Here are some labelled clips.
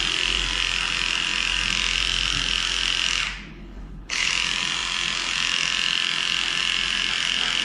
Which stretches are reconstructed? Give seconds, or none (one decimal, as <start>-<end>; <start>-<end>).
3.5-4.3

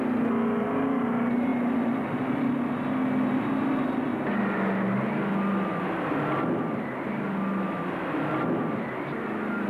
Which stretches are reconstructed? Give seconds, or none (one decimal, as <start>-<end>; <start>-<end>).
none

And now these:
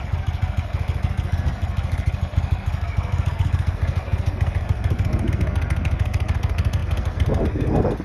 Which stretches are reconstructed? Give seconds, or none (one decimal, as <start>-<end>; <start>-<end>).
0.0-8.0